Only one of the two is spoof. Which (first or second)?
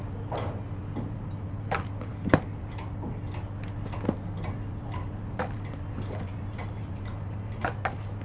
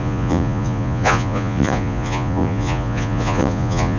second